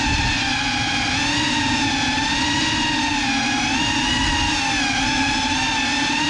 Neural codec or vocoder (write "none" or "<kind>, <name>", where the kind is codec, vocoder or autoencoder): none